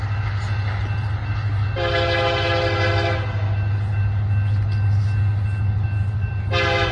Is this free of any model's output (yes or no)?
yes